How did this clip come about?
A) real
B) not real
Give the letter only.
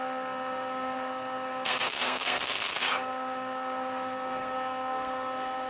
B